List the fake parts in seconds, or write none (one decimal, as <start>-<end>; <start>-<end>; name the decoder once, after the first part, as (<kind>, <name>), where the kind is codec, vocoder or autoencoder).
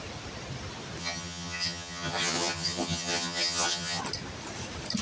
1.0-4.0 (vocoder, HiFi-GAN)